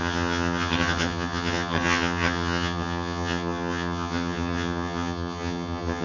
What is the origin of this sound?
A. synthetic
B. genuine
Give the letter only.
A